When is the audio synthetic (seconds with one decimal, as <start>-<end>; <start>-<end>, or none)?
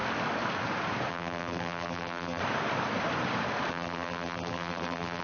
1.1-2.4; 3.7-5.2